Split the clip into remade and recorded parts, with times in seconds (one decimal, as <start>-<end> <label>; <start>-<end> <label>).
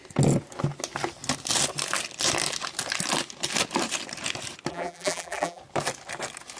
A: 0.0-4.7 recorded; 4.7-5.6 remade; 5.6-6.6 recorded